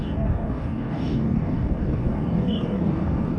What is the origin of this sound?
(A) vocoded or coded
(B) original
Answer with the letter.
A